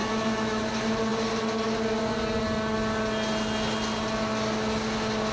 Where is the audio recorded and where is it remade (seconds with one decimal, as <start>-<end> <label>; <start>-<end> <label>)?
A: 0.0-0.6 remade; 0.6-5.3 recorded